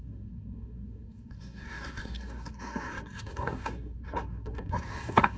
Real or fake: fake